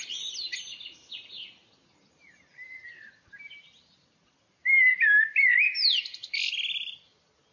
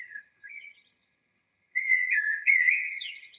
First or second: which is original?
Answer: first